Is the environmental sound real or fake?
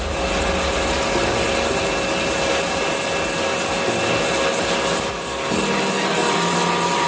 real